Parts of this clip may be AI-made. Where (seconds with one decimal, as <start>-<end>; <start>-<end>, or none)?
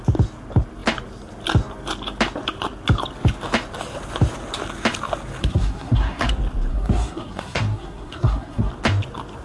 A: 5.4-6.3; 6.7-8.7